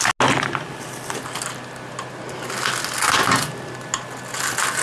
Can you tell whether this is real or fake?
real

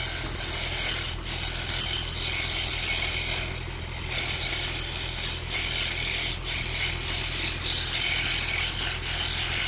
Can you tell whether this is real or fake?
real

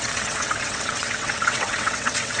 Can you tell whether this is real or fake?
fake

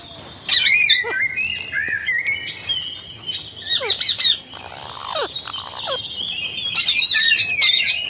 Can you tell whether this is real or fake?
real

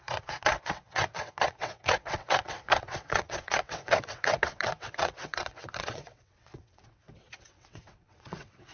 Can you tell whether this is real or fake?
fake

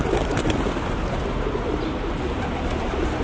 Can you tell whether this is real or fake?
real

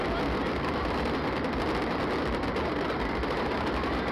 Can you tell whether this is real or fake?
real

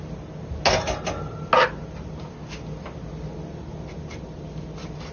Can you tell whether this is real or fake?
real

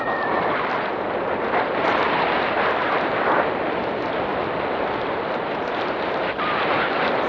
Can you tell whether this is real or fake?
fake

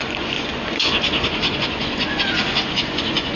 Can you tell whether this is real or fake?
fake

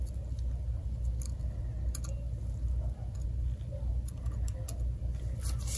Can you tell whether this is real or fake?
real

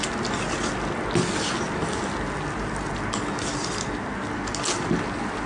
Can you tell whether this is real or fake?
real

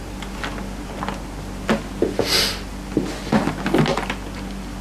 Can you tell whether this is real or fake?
real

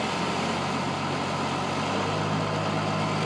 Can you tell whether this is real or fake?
real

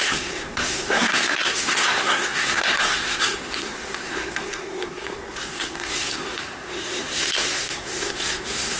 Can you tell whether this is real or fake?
fake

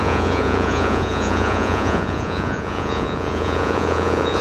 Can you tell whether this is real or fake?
fake